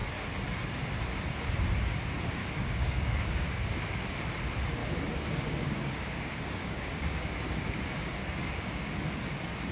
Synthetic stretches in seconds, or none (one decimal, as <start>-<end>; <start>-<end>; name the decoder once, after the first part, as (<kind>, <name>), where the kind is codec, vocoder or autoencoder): 2.4-3.8 (codec, DAC); 4.8-7.4; 8.2-8.9